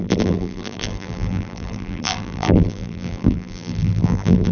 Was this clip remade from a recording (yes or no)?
yes